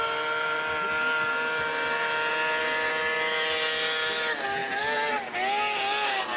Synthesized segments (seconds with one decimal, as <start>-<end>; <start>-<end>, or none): none